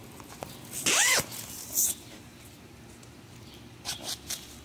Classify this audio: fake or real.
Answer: real